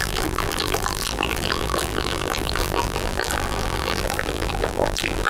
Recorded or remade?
remade